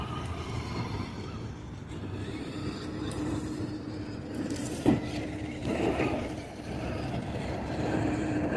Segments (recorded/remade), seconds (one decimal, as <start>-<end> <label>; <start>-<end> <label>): 0.0-8.6 remade